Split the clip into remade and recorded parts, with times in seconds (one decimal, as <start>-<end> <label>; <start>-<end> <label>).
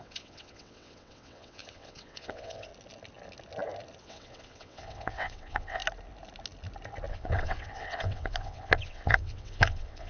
0.0-2.7 remade; 2.7-4.0 recorded; 4.0-5.8 remade; 5.8-7.1 recorded; 7.1-10.1 remade